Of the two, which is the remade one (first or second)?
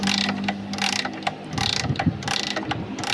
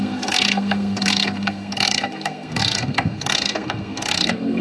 second